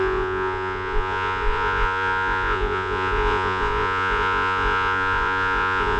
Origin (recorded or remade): remade